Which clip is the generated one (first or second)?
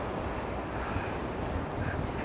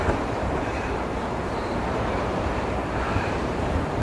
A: second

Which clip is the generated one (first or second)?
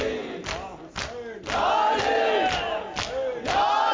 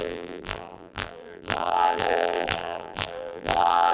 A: second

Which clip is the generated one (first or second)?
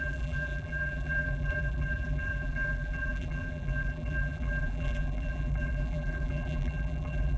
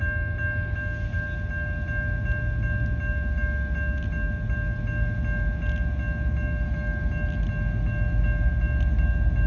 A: first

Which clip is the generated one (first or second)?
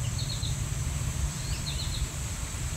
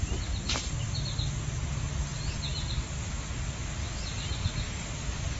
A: first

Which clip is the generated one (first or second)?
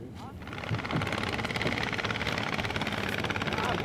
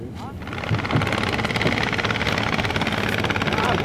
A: first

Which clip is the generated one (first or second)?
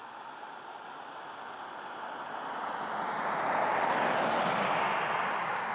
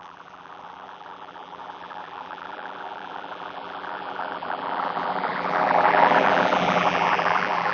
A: second